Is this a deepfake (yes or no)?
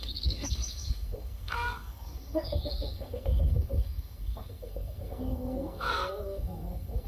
yes